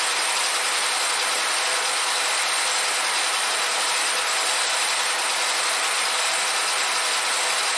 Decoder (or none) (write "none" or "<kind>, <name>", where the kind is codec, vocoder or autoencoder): none